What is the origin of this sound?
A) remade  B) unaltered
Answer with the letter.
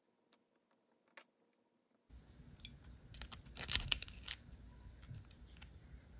B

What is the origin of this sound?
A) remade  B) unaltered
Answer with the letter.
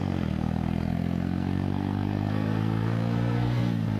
A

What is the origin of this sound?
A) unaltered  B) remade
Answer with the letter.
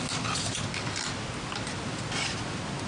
A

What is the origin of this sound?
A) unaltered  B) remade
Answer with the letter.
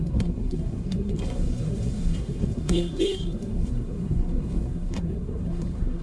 B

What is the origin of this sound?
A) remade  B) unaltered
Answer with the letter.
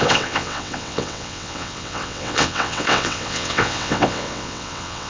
A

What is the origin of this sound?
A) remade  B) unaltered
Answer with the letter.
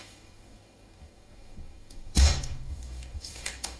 A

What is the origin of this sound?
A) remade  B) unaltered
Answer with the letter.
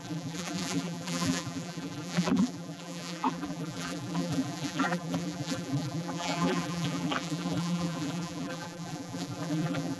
A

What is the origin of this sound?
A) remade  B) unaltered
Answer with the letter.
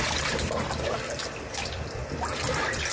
A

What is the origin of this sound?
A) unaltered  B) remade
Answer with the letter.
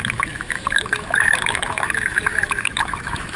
B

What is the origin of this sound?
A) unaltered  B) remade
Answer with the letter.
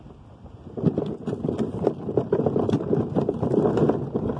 A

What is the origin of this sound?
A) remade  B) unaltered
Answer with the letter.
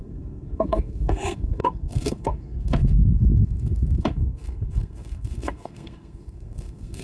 A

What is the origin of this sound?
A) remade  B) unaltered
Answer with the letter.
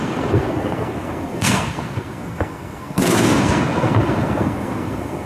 A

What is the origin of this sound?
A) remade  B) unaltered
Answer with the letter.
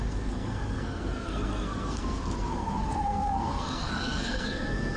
A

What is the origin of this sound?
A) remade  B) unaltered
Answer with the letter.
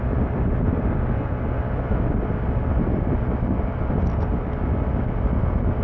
B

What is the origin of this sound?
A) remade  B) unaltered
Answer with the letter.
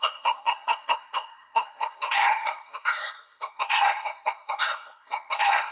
A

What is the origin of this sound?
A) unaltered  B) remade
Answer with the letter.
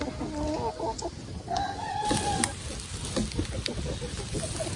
A